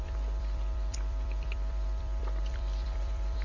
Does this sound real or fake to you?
fake